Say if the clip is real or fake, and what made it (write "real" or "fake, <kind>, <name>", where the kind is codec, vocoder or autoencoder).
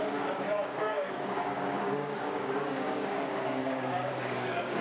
fake, codec, DAC